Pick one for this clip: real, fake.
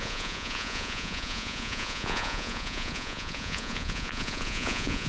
fake